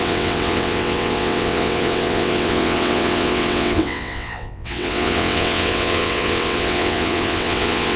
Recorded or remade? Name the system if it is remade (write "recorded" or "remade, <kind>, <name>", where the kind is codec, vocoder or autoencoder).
remade, vocoder, WaveNeXt